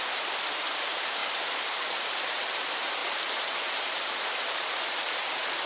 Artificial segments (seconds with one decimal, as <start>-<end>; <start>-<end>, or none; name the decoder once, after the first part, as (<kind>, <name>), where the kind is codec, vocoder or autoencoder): none